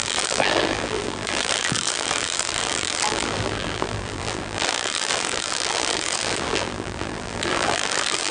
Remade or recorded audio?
remade